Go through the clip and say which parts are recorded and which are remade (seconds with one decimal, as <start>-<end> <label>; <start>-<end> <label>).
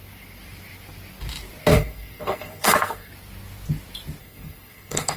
0.0-1.7 recorded; 1.7-3.1 remade; 3.1-4.2 recorded; 4.2-5.2 remade